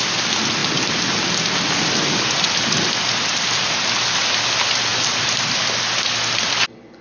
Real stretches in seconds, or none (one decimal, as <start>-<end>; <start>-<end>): 0.0-7.0